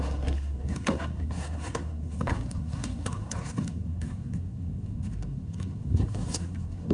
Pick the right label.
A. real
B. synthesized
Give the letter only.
B